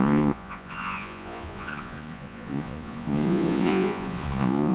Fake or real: fake